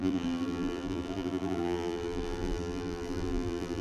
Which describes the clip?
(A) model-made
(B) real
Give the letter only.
A